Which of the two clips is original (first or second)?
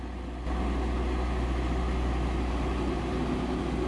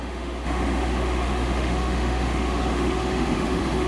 first